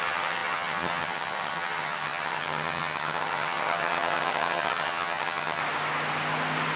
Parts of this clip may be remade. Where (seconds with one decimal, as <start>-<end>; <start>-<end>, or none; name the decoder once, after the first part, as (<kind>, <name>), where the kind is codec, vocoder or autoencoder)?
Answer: 0.0-5.6 (vocoder, HiFi-GAN)